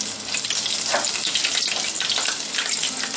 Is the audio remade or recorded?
recorded